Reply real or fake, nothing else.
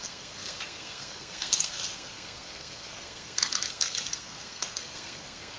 fake